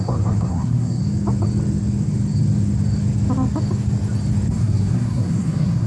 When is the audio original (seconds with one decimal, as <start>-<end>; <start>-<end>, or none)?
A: 1.0-4.5